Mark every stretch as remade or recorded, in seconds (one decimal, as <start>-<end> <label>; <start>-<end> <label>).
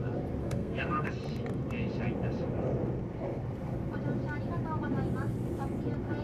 0.0-0.4 recorded; 0.4-1.1 remade; 1.1-6.2 recorded